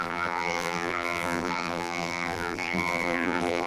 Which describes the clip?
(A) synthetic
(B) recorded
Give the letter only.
A